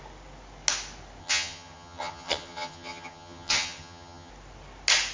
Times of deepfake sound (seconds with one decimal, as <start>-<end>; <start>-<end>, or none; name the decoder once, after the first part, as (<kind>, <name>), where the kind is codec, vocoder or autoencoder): 1.2-4.3 (vocoder, HiFi-GAN)